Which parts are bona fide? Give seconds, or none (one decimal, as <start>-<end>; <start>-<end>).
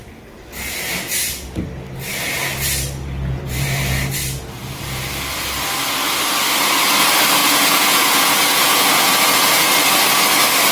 0.0-7.4; 9.7-10.7